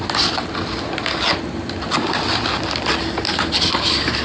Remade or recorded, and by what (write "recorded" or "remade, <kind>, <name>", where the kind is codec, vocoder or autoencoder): recorded